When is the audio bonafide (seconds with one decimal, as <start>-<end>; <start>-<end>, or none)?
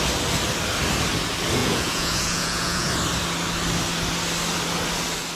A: 0.0-1.6; 2.9-5.4